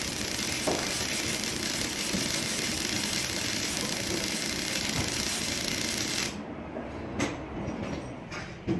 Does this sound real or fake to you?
fake